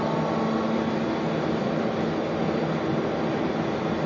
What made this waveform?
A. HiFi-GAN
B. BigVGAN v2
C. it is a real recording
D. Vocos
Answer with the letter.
C